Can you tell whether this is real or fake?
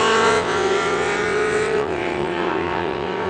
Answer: fake